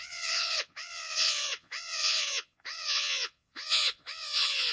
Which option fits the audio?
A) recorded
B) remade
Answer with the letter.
B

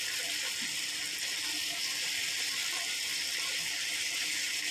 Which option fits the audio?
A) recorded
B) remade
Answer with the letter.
A